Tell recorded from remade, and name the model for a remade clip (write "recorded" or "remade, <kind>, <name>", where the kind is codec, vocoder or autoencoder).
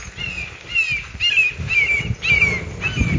recorded